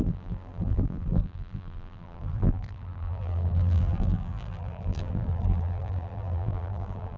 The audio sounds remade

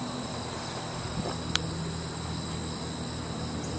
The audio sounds recorded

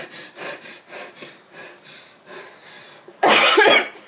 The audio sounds remade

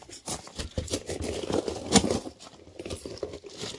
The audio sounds remade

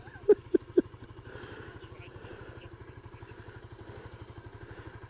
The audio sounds remade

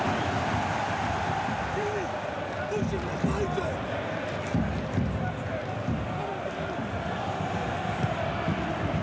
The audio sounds remade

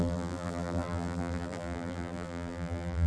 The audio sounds remade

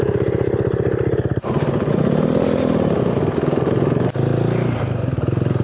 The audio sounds recorded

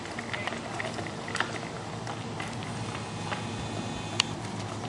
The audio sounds remade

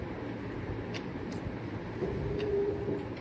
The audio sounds remade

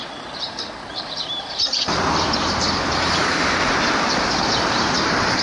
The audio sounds remade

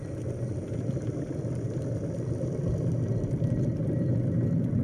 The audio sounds recorded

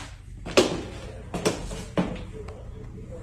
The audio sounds recorded